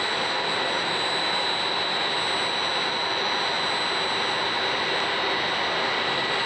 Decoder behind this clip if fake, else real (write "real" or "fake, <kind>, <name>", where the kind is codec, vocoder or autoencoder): real